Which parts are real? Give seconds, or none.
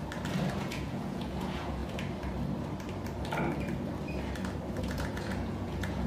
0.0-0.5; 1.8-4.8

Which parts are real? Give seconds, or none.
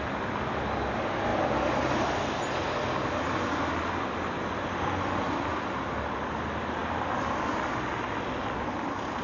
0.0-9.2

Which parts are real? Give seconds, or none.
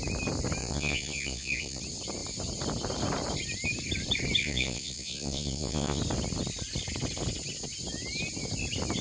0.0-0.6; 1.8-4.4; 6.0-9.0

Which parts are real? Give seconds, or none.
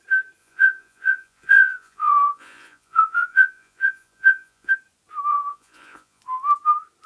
0.0-0.4; 4.7-5.3; 6.2-7.1